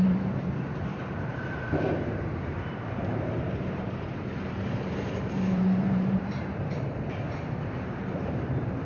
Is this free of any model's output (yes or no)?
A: no